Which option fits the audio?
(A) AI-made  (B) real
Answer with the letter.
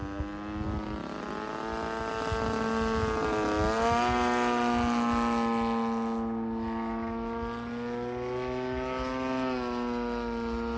B